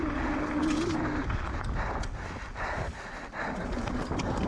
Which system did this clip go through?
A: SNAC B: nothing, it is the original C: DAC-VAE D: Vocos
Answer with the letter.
B